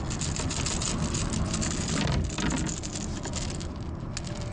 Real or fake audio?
real